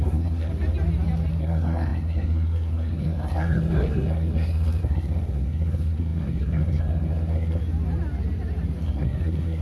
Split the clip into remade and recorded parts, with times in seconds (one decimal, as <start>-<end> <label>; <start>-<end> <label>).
0.0-0.5 remade; 0.5-1.4 recorded; 1.4-7.6 remade; 7.6-8.8 recorded; 8.8-9.6 remade